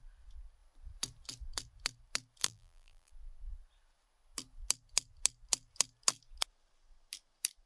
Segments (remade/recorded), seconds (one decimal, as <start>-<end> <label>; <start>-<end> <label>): 0.0-2.4 recorded; 2.4-3.1 remade; 3.1-7.7 recorded